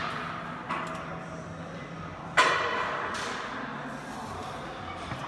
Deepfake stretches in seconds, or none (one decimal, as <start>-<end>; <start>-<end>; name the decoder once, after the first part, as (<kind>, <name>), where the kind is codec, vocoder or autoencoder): none